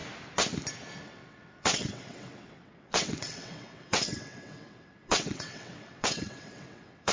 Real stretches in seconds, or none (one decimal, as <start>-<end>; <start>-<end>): 0.0-1.0